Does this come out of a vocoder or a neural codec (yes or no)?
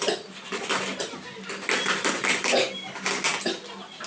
no